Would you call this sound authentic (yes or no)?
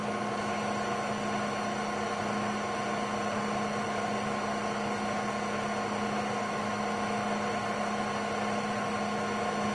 yes